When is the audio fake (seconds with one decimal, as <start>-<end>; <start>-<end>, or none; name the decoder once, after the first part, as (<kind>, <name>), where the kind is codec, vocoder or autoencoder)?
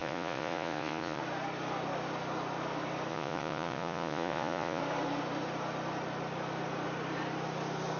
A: 0.0-1.2 (vocoder, Vocos); 3.1-4.8